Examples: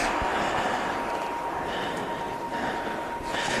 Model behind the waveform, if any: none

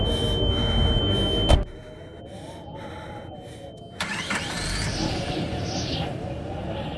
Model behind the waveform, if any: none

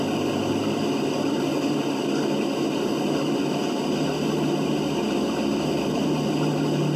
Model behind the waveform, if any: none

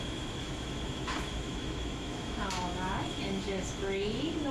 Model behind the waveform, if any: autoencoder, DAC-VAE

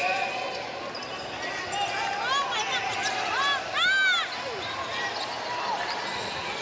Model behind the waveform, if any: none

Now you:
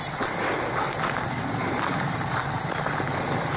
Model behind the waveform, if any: none